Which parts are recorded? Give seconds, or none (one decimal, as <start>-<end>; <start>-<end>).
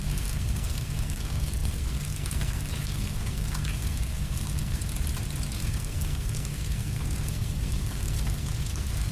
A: 4.9-5.5